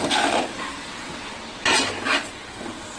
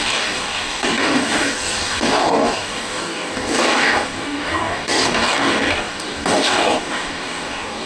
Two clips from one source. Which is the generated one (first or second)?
second